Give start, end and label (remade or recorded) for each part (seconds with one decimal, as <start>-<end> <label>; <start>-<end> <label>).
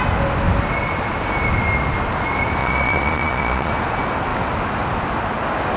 0.0-2.6 recorded; 2.6-3.7 remade; 3.7-5.8 recorded